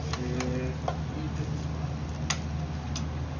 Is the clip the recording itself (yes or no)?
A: yes